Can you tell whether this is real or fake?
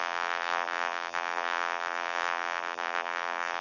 fake